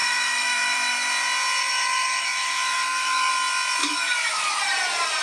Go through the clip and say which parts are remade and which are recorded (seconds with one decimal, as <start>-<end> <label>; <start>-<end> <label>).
0.0-1.1 remade; 1.1-1.6 recorded; 1.6-3.3 remade; 3.3-3.8 recorded; 3.8-4.6 remade; 4.6-5.2 recorded